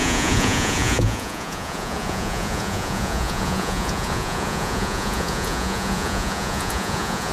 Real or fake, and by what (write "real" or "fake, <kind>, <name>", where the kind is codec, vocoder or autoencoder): fake, vocoder, Vocos